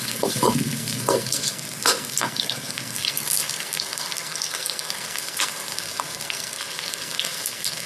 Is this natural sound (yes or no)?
no